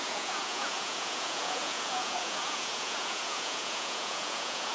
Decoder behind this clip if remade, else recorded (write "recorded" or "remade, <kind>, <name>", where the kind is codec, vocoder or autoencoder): remade, vocoder, Vocos